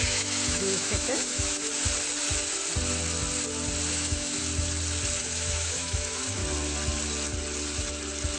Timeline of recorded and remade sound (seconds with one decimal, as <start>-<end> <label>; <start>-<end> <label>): 0.0-1.7 remade; 1.7-3.9 recorded; 3.9-4.4 remade; 4.4-5.2 recorded; 5.2-6.4 remade; 6.4-8.4 recorded